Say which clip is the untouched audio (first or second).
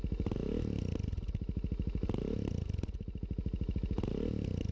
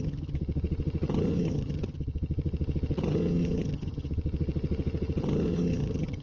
first